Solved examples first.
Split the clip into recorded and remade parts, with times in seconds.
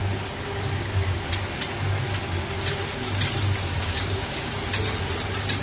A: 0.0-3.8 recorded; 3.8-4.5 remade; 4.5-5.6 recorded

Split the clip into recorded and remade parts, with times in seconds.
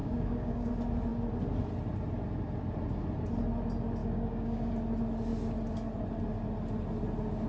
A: 0.0-0.7 remade; 0.7-4.0 recorded; 4.0-4.7 remade; 4.7-7.5 recorded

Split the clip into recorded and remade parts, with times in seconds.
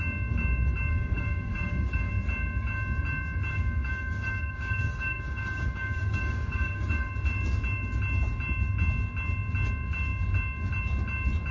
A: 0.0-0.9 recorded; 0.9-2.1 remade; 2.1-3.5 recorded; 3.5-7.1 remade; 7.1-11.5 recorded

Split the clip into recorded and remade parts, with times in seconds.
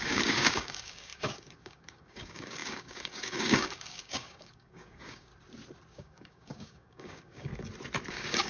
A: 0.0-5.3 remade; 5.3-5.9 recorded; 5.9-7.5 remade; 7.5-8.1 recorded; 8.1-8.5 remade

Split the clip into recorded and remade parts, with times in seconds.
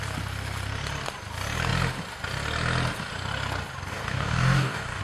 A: 0.0-3.9 recorded; 3.9-5.0 remade